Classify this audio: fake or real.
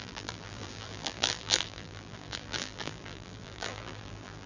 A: fake